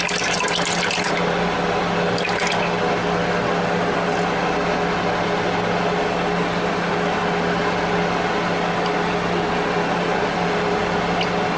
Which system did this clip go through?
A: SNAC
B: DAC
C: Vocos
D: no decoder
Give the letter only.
D